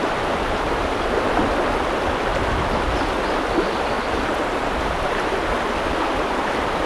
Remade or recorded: recorded